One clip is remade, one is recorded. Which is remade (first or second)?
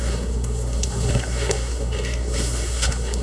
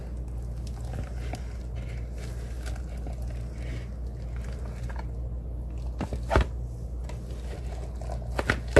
first